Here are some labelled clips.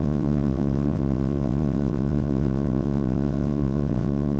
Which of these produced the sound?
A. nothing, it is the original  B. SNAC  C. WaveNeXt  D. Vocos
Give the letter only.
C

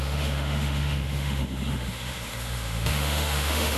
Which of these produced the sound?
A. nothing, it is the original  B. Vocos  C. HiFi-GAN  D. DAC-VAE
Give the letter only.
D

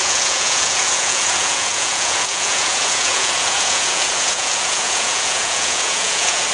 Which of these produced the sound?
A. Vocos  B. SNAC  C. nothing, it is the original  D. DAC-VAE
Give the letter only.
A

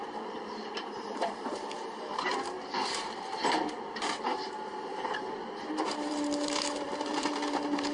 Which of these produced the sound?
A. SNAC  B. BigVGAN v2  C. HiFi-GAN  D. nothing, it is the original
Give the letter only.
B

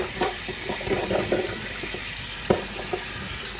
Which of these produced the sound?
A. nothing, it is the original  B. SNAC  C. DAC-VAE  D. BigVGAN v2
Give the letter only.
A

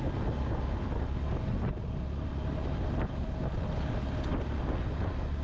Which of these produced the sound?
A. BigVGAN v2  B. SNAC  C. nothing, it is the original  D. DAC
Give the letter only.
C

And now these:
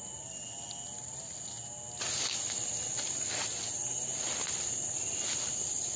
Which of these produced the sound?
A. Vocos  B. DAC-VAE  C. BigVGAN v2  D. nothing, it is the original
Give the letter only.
D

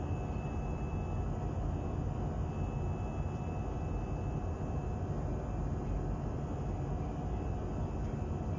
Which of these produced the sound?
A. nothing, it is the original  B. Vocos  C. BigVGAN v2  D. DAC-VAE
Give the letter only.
A